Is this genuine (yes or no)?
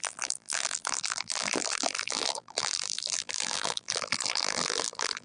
no